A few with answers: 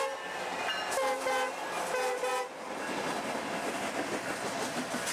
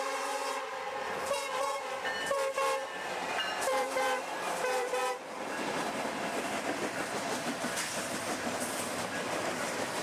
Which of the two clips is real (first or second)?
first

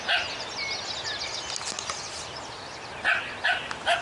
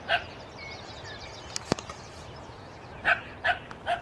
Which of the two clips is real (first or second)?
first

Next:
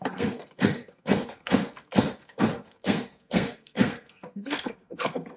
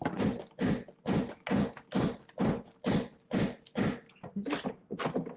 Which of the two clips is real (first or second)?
second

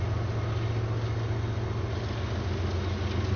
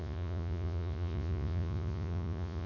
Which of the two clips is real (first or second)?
first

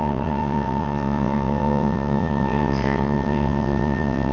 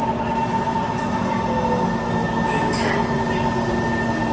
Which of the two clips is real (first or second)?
second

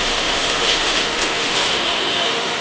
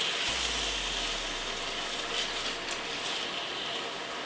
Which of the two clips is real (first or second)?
second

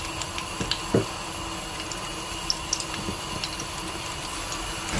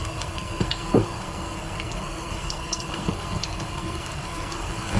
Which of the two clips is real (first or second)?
first